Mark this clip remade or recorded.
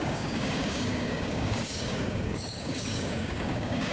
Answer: remade